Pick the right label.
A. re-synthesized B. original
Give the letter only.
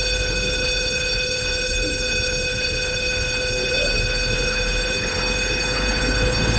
A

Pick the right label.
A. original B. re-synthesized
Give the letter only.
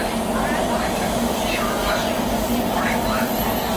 A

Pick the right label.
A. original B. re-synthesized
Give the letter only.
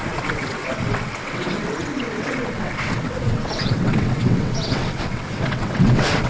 B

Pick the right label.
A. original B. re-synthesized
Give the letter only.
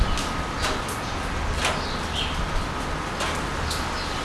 A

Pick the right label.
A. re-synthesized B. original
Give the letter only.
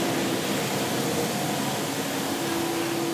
B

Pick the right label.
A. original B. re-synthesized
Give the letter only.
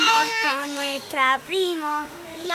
B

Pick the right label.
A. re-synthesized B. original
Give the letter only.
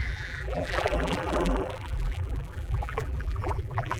A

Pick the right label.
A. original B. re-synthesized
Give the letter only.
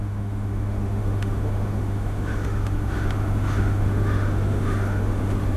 B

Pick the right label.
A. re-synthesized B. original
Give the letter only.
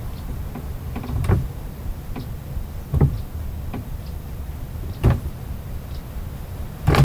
A